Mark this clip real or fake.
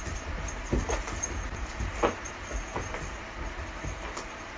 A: real